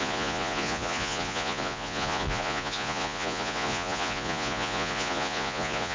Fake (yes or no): yes